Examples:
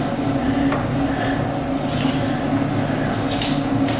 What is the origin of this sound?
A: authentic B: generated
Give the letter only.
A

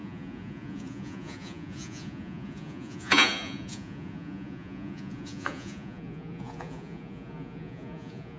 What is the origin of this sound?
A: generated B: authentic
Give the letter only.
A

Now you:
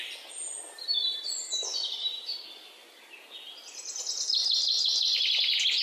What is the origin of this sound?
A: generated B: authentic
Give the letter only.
B